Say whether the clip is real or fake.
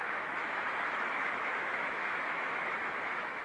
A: fake